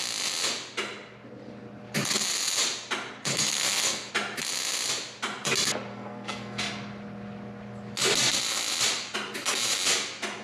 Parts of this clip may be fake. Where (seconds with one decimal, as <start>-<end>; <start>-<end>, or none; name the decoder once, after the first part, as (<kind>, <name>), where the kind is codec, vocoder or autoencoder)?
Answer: 3.3-4.1 (codec, SNAC); 5.9-6.6